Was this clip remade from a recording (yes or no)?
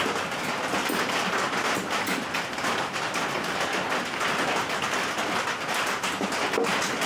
no